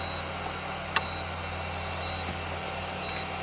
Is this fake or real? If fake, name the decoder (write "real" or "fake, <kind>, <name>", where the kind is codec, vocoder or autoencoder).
real